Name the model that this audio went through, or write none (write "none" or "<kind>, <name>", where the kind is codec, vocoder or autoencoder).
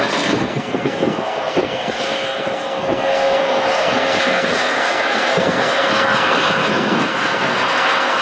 codec, SNAC